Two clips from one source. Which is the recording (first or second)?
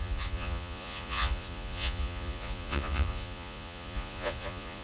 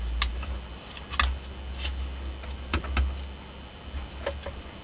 second